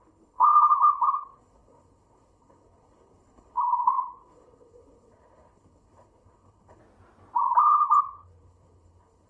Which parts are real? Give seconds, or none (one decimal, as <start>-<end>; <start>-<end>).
6.8-7.6